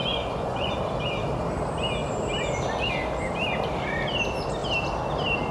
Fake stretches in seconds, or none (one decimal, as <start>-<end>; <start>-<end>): 0.0-0.7